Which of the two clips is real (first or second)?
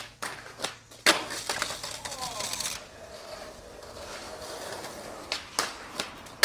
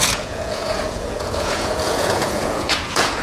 first